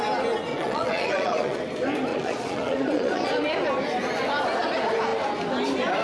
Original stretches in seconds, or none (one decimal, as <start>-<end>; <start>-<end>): 0.0-0.5; 1.6-2.1; 3.3-6.0